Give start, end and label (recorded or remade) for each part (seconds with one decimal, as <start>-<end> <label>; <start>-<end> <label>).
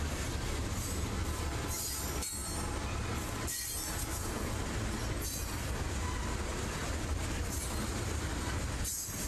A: 0.0-9.3 recorded